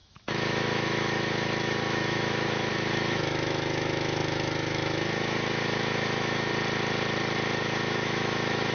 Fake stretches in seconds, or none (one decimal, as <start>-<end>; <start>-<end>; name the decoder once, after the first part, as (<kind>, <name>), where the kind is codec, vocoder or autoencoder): 0.0-6.5 (autoencoder, DAC-VAE); 7.6-8.7